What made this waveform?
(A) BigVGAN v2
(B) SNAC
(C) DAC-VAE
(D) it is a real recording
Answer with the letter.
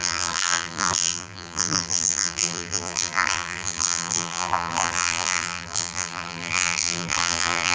A